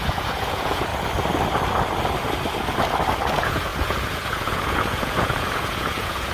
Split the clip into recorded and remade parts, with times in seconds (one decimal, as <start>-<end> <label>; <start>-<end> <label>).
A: 0.0-0.9 remade; 0.9-3.3 recorded; 3.3-6.3 remade